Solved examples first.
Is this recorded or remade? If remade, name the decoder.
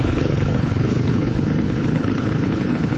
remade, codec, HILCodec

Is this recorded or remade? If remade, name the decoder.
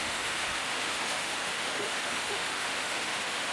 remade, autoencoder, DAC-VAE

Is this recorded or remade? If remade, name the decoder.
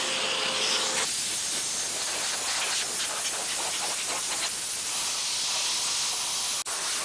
recorded